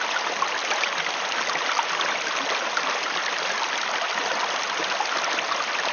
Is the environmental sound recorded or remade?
recorded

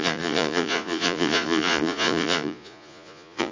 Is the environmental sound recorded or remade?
remade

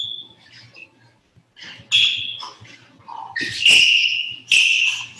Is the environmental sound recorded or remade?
recorded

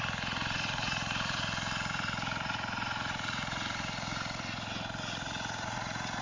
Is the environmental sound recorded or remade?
remade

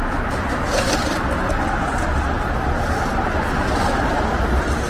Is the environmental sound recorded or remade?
recorded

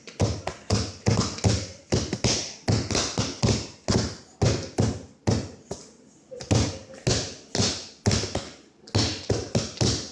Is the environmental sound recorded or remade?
recorded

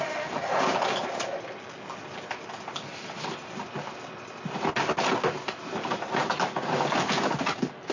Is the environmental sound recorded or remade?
recorded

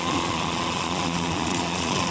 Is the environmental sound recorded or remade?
remade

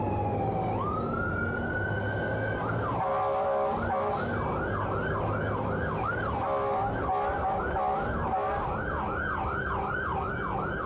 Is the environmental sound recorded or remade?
recorded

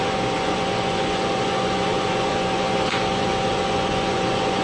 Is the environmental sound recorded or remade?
remade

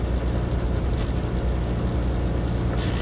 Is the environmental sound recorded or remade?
recorded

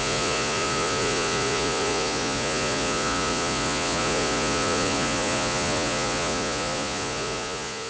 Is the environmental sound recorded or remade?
remade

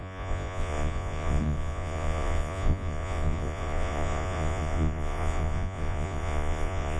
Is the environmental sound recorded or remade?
remade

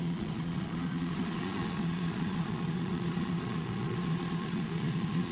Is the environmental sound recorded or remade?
remade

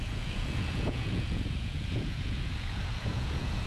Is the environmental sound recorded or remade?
remade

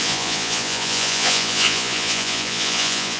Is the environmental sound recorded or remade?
remade